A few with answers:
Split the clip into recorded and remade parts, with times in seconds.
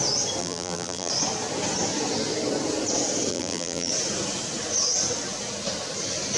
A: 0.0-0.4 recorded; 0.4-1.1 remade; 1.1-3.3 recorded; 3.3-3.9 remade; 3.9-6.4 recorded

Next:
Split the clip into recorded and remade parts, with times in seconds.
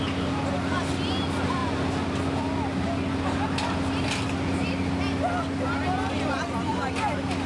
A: 0.0-7.5 recorded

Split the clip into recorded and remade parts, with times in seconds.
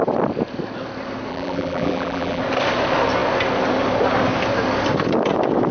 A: 0.0-1.3 recorded; 1.3-2.4 remade; 2.4-5.7 recorded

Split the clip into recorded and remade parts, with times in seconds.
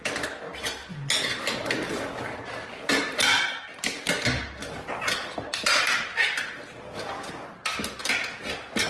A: 0.0-0.8 recorded; 0.8-1.4 remade; 1.4-3.3 recorded; 3.3-3.8 remade; 3.8-8.9 recorded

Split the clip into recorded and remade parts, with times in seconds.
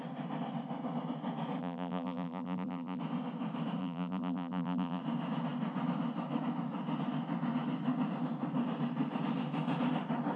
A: 0.0-1.6 recorded; 1.6-3.0 remade; 3.0-3.8 recorded; 3.8-5.0 remade; 5.0-10.4 recorded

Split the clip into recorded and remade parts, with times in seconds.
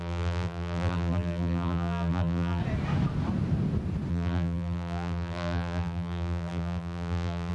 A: 0.0-2.6 remade; 2.6-4.1 recorded; 4.1-7.5 remade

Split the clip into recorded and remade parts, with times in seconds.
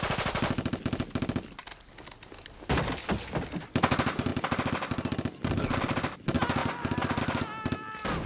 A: 0.0-8.3 recorded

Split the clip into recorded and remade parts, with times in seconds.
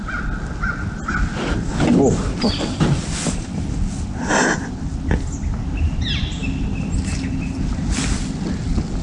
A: 0.0-9.0 recorded